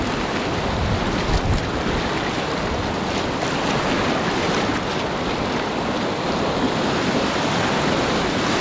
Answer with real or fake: real